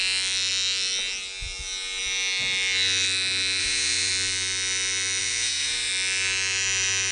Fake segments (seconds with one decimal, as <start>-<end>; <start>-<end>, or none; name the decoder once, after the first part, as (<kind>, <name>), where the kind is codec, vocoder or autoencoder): 3.6-4.1 (vocoder, Vocos); 5.2-5.9